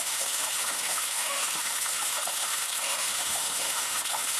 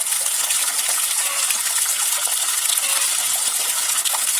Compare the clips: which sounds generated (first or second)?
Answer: first